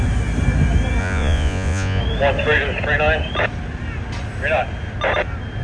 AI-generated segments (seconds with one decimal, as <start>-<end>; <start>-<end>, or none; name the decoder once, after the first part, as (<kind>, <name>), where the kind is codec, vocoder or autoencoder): 1.0-2.0 (vocoder, Vocos)